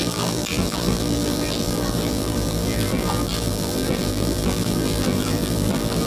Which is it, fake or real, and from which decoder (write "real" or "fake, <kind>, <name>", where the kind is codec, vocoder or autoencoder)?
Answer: fake, vocoder, BigVGAN v2